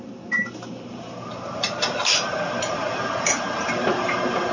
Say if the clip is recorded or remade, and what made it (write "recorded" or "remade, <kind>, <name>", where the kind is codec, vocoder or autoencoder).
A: remade, vocoder, BigVGAN v2